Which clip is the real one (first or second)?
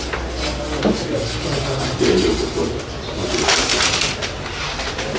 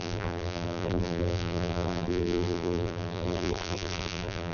first